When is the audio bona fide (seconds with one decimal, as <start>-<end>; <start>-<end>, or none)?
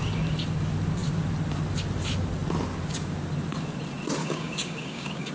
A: 0.0-4.2